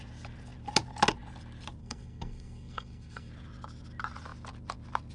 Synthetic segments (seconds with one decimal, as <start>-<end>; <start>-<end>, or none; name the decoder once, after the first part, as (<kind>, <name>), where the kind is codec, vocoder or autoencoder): 1.8-3.3 (codec, SNAC)